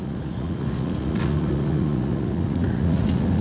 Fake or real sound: fake